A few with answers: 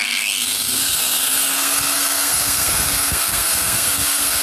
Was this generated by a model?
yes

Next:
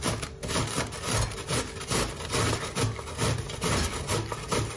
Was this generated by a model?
no